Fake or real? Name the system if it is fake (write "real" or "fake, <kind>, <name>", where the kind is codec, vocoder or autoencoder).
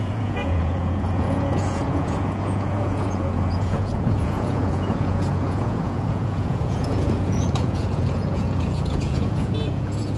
fake, vocoder, Vocos